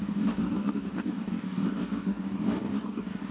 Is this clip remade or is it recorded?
remade